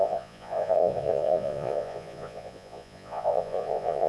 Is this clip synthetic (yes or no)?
yes